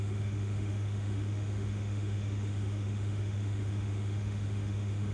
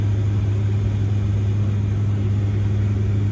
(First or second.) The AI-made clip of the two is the first